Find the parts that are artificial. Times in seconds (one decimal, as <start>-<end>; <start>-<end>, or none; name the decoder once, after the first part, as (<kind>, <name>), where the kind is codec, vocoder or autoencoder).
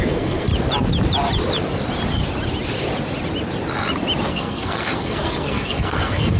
0.0-0.5 (codec, SNAC); 4.3-6.4